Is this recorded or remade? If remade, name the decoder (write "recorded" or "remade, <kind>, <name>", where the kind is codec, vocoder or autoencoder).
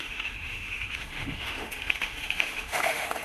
remade, autoencoder, DAC-VAE